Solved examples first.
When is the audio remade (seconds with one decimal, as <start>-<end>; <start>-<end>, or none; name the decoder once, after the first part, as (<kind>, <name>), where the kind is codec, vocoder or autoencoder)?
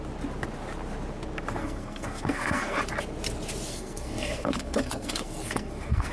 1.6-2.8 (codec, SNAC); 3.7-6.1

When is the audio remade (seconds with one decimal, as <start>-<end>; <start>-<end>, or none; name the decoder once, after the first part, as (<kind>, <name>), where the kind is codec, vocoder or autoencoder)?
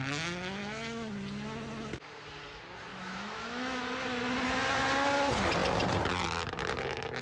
0.6-1.1 (autoencoder, DAC-VAE); 2.9-3.8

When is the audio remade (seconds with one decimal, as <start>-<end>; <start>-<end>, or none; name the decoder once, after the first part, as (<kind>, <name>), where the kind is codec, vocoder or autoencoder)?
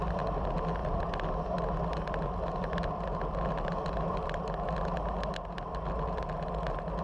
none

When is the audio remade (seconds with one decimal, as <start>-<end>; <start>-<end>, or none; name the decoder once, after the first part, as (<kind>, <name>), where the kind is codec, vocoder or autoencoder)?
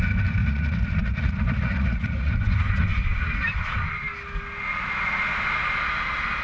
0.4-2.3 (vocoder, Vocos)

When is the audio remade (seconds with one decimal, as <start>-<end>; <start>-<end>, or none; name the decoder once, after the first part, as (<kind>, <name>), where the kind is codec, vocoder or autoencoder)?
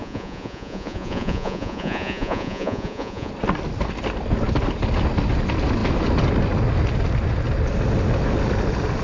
0.0-3.3 (vocoder, Vocos)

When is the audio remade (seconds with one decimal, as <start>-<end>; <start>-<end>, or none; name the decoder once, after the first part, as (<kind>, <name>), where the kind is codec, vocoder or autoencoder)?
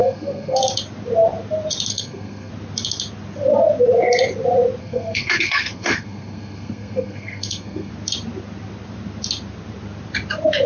0.0-0.6 (codec, SNAC); 1.9-2.5; 4.8-7.9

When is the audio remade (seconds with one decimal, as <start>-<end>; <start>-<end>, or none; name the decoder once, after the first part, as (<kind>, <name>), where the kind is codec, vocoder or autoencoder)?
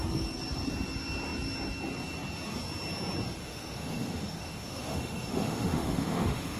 3.4-6.6 (autoencoder, DAC-VAE)